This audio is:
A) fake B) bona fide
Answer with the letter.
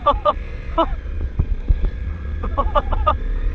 A